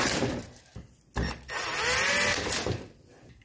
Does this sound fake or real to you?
real